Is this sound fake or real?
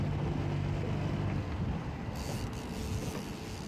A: real